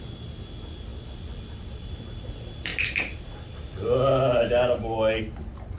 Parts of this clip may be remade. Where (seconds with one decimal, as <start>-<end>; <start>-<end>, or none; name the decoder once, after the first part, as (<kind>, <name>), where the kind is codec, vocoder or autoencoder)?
none